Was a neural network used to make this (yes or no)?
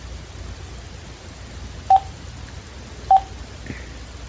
no